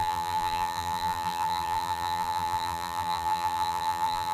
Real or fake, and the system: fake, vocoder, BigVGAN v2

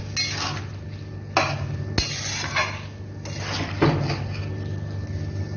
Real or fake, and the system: real